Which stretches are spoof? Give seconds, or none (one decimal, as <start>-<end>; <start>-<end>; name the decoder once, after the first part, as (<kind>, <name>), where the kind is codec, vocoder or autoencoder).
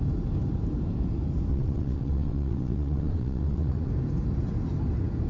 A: 1.5-3.9 (vocoder, WaveNeXt)